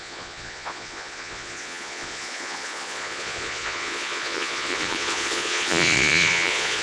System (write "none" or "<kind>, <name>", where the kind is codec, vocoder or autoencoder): vocoder, Vocos